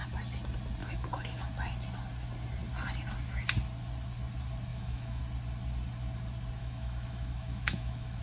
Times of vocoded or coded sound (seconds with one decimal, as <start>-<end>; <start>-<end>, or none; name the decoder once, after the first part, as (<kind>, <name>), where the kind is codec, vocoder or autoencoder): 0.8-1.5 (autoencoder, DAC-VAE); 4.7-5.2; 6.6-8.2